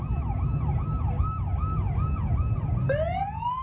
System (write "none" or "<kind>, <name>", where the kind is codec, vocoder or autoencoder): none